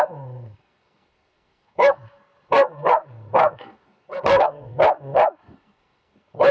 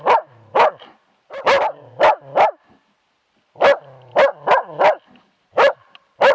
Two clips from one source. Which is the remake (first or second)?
first